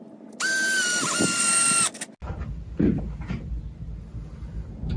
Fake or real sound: real